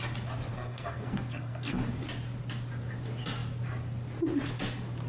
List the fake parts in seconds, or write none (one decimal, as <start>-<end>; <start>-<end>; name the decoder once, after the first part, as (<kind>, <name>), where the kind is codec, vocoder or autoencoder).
0.5-1.8 (codec, SNAC)